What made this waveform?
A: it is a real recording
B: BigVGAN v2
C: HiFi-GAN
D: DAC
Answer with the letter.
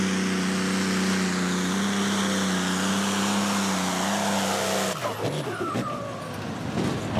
A